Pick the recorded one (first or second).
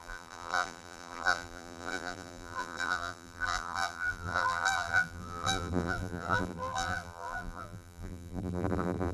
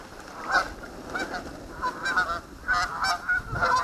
second